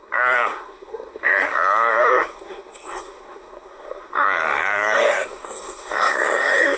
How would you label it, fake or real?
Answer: fake